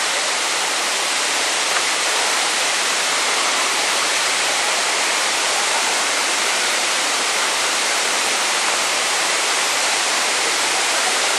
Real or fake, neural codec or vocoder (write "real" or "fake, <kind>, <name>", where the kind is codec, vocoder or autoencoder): fake, vocoder, BigVGAN v2